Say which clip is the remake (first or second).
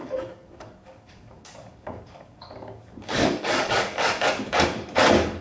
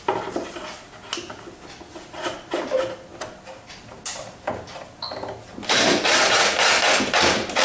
first